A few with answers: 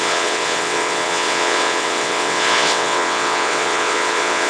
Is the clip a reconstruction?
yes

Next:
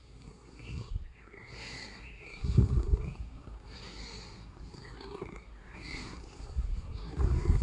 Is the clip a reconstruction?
yes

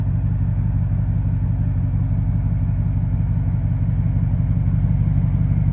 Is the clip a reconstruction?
no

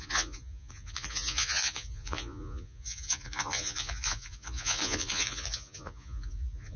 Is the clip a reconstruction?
yes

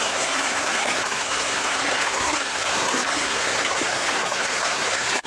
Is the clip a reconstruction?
yes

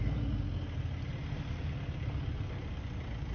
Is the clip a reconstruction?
no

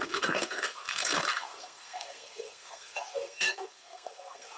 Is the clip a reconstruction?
yes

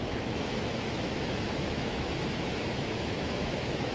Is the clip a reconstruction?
yes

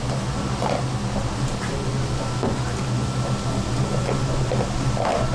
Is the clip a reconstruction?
no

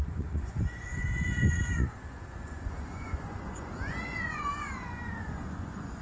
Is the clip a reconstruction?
yes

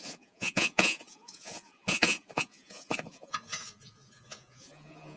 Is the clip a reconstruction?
yes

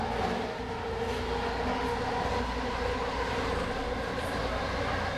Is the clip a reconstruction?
no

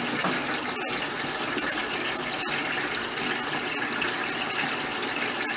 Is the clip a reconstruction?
no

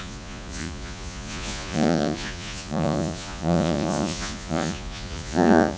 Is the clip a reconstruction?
yes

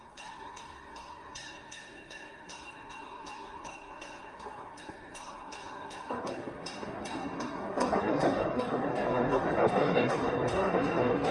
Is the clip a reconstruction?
yes